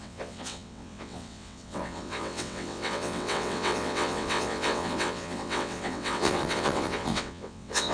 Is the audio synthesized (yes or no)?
yes